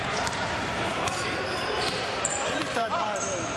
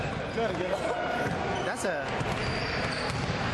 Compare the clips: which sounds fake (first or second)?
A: first